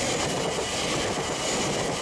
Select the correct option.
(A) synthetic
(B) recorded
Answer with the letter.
B